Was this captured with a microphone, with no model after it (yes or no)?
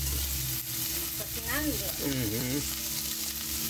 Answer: yes